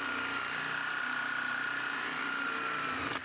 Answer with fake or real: real